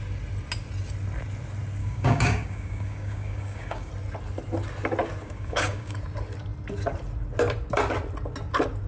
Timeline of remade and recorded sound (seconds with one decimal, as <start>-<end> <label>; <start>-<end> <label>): 0.0-1.8 recorded; 1.8-3.9 remade; 3.9-5.2 recorded; 5.2-6.0 remade; 6.0-8.9 recorded